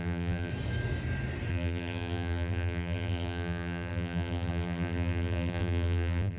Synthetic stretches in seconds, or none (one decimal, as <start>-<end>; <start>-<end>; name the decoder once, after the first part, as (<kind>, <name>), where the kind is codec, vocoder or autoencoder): 0.0-0.5 (vocoder, BigVGAN v2); 1.5-6.4